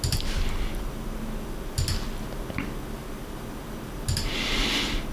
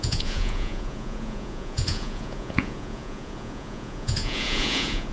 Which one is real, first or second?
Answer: first